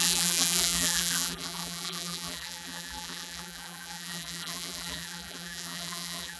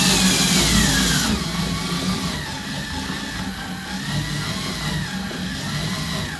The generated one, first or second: first